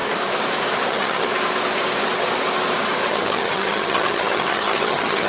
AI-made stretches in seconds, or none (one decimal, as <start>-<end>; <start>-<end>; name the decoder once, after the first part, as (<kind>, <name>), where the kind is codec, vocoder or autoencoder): 0.9-1.3 (vocoder, HiFi-GAN); 3.1-5.3